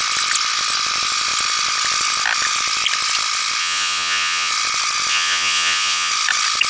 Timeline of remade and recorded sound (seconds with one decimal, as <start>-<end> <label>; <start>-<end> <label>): 0.0-3.6 recorded; 3.6-4.5 remade; 4.5-5.1 recorded; 5.1-6.1 remade; 6.1-6.7 recorded